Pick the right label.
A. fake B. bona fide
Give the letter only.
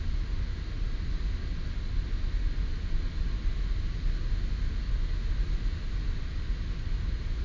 B